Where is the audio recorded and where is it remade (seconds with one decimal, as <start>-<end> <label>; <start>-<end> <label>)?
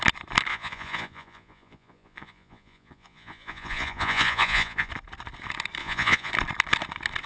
0.0-0.5 recorded; 0.5-4.9 remade; 4.9-5.8 recorded; 5.8-6.3 remade; 6.3-7.3 recorded